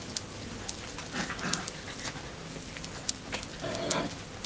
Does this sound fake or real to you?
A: real